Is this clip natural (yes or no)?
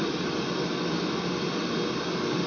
no